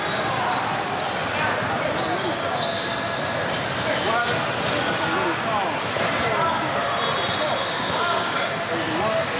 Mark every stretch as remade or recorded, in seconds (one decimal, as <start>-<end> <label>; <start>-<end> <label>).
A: 0.0-7.6 recorded; 7.6-8.5 remade; 8.5-9.4 recorded